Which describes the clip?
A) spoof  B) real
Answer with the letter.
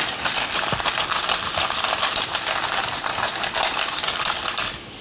B